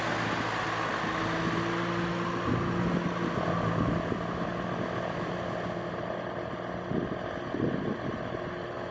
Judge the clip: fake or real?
real